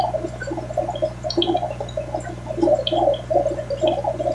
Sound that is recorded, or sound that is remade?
recorded